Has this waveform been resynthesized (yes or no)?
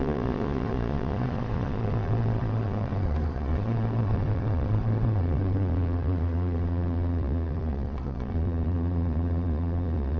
yes